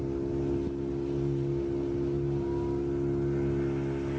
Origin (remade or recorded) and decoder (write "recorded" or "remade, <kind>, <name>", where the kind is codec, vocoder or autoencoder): recorded